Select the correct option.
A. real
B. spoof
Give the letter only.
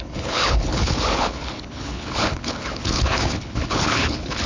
B